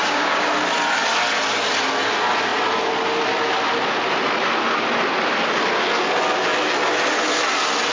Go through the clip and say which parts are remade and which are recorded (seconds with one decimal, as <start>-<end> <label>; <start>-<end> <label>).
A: 0.0-0.5 remade; 0.5-7.9 recorded

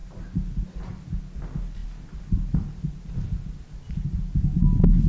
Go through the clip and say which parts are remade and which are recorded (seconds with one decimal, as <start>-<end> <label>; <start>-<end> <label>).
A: 0.0-5.1 recorded

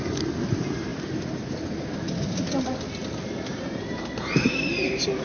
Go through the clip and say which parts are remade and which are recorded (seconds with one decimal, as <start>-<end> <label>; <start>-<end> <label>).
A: 0.0-5.2 recorded